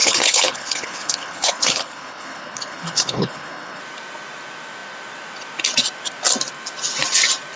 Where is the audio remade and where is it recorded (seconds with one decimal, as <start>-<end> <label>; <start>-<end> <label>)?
0.0-3.8 remade; 3.8-7.6 recorded